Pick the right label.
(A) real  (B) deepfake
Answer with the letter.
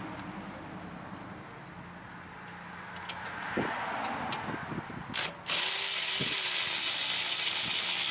A